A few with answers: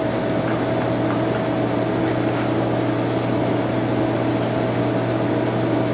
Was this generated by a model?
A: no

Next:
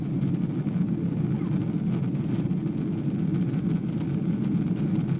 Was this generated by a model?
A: no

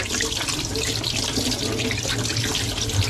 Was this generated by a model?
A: no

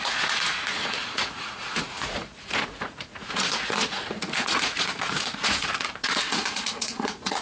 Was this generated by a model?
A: yes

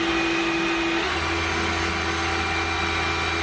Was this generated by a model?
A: no